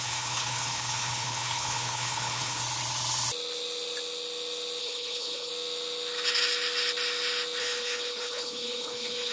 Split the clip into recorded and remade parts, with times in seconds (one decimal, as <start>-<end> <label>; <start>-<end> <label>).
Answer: 0.0-2.6 remade; 2.6-4.8 recorded; 4.8-5.5 remade; 5.5-7.6 recorded; 7.6-9.3 remade